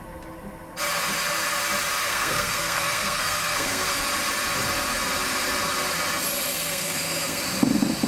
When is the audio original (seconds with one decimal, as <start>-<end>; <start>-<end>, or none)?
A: 0.0-2.0; 4.0-6.5; 7.4-8.1